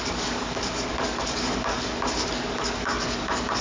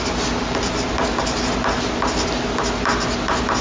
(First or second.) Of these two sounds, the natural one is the second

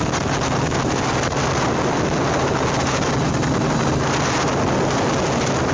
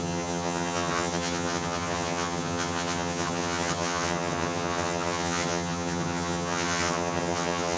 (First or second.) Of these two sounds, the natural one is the first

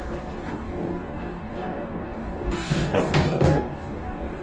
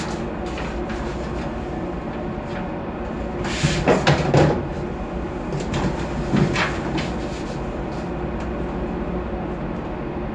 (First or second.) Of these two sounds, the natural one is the second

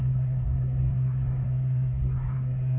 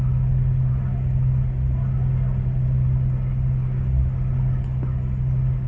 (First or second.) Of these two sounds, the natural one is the second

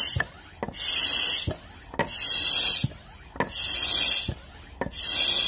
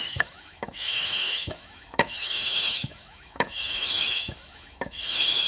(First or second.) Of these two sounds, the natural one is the first